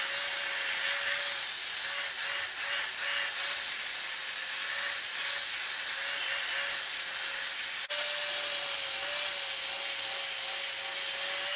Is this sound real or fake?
real